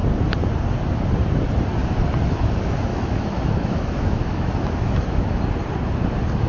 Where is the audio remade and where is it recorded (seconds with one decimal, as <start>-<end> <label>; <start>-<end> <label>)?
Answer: 0.0-2.9 recorded; 2.9-5.4 remade; 5.4-6.5 recorded